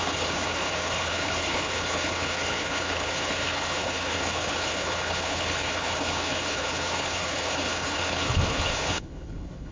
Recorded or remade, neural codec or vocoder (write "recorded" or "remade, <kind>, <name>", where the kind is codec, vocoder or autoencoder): remade, codec, HILCodec